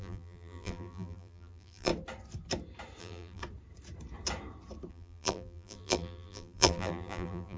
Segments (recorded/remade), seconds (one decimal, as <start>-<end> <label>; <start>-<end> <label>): 0.0-1.9 remade; 1.9-3.0 recorded; 3.0-3.4 remade; 3.4-4.9 recorded; 4.9-7.6 remade